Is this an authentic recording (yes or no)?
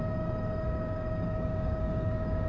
no